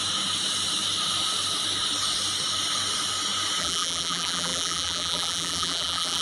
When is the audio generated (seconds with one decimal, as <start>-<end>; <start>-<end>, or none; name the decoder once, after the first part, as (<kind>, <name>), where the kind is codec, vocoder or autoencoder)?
3.6-6.2 (vocoder, BigVGAN v2)